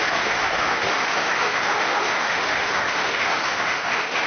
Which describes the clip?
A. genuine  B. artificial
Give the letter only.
B